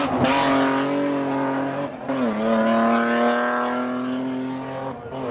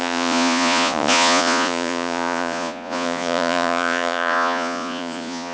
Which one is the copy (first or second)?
second